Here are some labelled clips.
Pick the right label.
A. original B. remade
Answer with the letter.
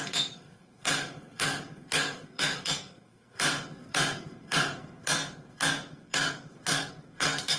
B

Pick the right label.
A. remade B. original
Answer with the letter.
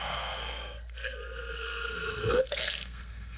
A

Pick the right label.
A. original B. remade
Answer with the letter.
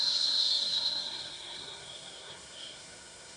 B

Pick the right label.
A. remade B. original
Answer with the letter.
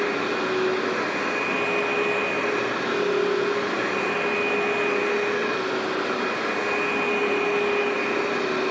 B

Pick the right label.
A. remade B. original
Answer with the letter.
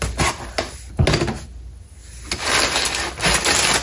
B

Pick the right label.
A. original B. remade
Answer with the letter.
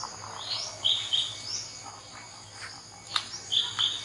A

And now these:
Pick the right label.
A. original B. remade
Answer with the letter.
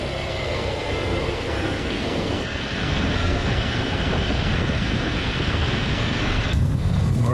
B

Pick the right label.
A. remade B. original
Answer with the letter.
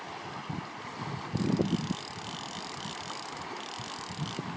B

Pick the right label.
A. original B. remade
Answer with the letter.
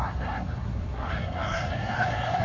B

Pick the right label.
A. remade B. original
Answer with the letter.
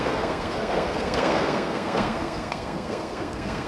A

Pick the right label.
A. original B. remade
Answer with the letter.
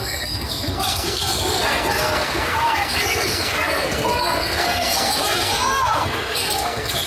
B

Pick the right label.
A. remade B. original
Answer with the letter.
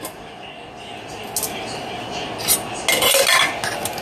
B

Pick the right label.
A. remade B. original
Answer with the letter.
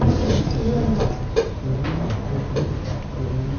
B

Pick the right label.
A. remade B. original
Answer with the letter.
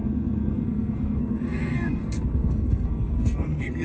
A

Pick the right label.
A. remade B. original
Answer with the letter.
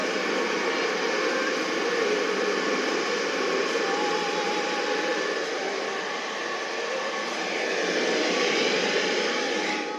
B